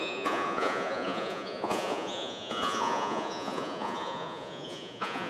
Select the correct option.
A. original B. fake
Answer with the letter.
B